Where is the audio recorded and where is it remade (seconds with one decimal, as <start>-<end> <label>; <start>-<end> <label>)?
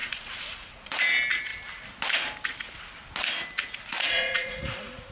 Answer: 0.0-1.0 remade; 1.0-3.9 recorded; 3.9-5.1 remade